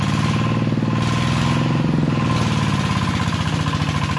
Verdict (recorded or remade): recorded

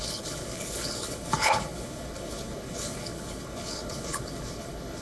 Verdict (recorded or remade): remade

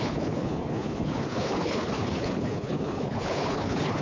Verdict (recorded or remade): remade